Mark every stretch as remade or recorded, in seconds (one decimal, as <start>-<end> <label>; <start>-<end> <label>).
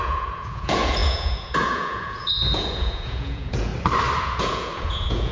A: 0.0-3.7 remade; 3.7-4.2 recorded; 4.2-5.3 remade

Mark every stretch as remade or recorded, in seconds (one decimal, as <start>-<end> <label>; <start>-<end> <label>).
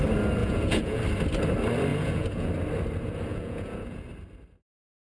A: 0.0-0.4 recorded; 0.4-1.0 remade; 1.0-1.9 recorded; 1.9-2.5 remade; 2.5-3.3 recorded; 3.3-4.0 remade; 4.0-5.0 recorded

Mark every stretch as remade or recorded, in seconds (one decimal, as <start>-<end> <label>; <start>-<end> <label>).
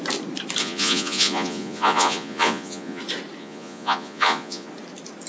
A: 0.0-0.6 recorded; 0.6-3.0 remade; 3.0-3.4 recorded; 3.4-4.7 remade; 4.7-5.3 recorded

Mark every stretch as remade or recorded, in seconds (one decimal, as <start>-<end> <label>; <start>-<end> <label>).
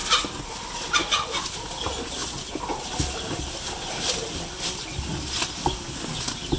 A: 0.0-6.6 recorded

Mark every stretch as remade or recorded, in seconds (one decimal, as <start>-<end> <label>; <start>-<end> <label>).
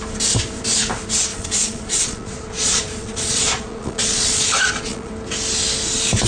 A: 0.0-1.3 recorded; 1.3-5.1 remade; 5.1-6.3 recorded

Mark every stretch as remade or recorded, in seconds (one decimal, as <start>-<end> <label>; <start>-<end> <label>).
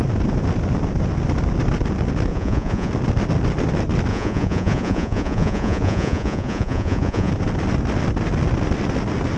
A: 0.0-2.3 recorded; 2.3-2.9 remade; 2.9-4.1 recorded; 4.1-7.3 remade; 7.3-9.4 recorded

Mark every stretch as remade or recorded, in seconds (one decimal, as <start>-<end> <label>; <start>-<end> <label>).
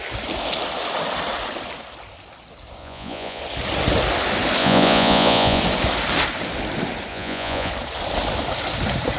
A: 0.0-2.8 recorded; 2.8-3.4 remade; 3.4-4.6 recorded; 4.6-5.6 remade; 5.6-7.1 recorded; 7.1-7.7 remade; 7.7-9.2 recorded